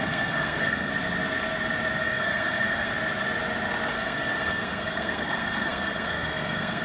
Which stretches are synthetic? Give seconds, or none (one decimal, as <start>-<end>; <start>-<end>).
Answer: 0.0-0.9; 2.0-2.9; 3.9-6.8